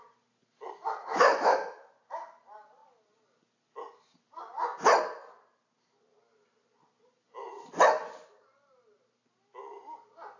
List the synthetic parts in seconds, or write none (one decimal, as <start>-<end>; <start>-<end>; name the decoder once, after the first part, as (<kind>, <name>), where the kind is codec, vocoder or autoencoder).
1.1-1.9 (autoencoder, DAC-VAE)